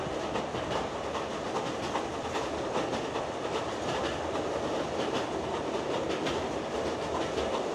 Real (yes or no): yes